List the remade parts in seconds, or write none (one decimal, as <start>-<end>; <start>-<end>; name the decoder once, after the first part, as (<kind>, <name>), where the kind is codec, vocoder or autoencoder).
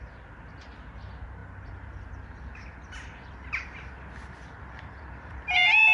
none